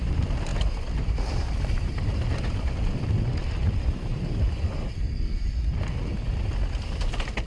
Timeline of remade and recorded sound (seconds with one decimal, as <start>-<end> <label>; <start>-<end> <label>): 0.0-7.5 recorded